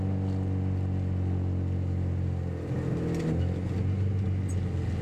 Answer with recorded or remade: recorded